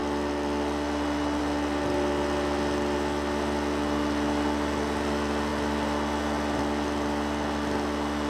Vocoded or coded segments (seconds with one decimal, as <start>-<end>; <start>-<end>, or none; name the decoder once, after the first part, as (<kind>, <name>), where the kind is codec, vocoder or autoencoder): none